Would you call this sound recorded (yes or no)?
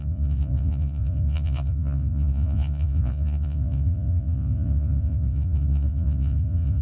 no